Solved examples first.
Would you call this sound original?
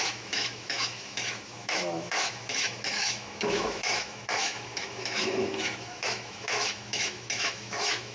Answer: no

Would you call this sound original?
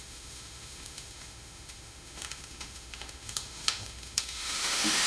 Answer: no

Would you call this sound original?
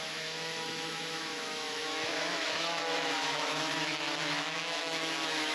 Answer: no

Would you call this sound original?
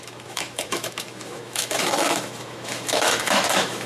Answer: no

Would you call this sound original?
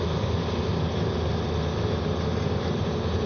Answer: yes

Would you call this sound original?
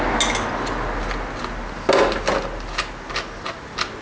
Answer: yes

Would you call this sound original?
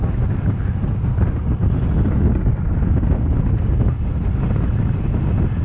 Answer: yes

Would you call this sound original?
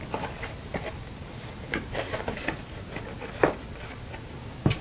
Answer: yes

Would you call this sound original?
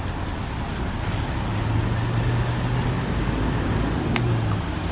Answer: yes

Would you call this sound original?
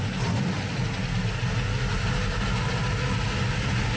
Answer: yes